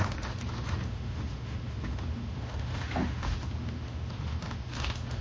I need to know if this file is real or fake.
fake